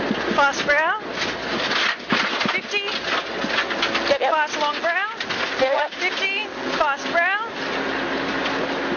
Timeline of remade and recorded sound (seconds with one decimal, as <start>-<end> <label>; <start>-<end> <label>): 0.0-9.0 recorded

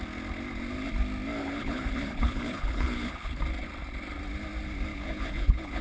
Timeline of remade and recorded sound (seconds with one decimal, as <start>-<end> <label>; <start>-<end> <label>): 0.0-1.4 recorded; 1.4-3.4 remade; 3.4-4.9 recorded; 4.9-5.8 remade

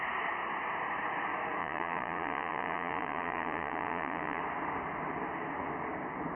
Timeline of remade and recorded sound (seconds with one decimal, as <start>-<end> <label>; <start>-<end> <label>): 0.0-1.6 recorded; 1.6-4.4 remade; 4.4-6.4 recorded

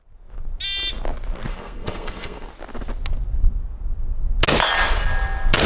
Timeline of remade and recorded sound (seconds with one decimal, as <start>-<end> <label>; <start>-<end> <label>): 0.0-1.5 recorded; 1.5-2.5 remade; 2.5-5.7 recorded

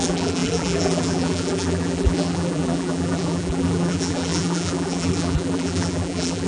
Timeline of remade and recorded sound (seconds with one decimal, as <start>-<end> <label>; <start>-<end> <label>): 0.0-6.5 remade

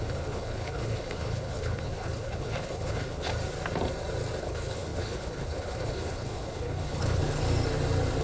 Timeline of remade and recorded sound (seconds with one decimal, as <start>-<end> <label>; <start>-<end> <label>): 0.0-3.3 remade; 3.3-4.4 recorded; 4.4-7.2 remade; 7.2-8.2 recorded

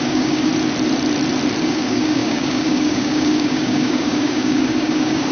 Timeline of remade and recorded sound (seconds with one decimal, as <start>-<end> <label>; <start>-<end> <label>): 0.0-0.5 remade; 0.5-1.6 recorded; 1.6-5.3 remade